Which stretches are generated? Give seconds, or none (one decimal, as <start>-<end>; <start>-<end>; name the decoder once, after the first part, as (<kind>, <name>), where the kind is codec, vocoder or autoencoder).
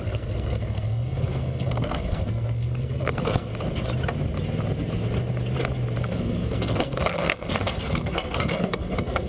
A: 0.0-3.5 (codec, SNAC); 6.0-9.3